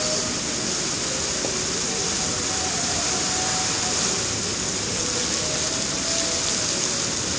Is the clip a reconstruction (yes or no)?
no